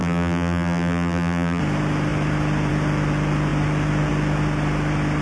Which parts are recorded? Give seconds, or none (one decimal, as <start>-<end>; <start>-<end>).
1.6-5.2